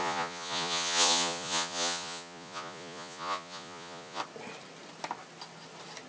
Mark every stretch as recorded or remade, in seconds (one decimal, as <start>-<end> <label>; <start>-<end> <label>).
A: 0.0-4.2 remade; 4.2-6.1 recorded